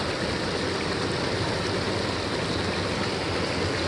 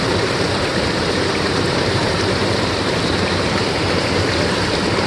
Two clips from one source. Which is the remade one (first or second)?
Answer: second